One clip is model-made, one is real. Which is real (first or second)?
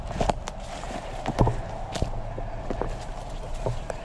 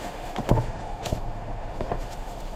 first